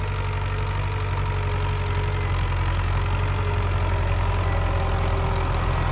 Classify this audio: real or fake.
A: real